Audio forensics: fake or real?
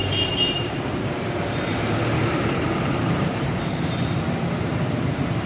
fake